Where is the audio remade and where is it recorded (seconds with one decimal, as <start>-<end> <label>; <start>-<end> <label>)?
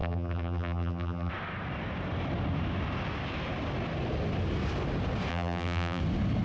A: 0.0-1.3 remade; 1.3-5.3 recorded; 5.3-6.0 remade; 6.0-6.4 recorded